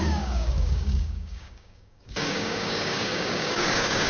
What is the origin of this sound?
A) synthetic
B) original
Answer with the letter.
A